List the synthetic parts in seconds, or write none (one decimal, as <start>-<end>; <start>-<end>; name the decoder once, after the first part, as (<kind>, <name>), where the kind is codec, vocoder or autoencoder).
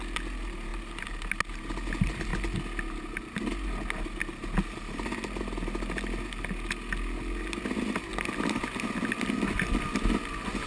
none